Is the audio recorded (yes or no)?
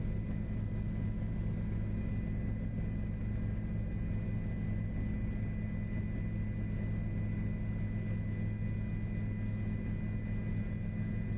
yes